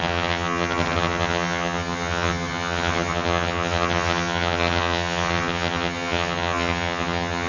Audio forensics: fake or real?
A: fake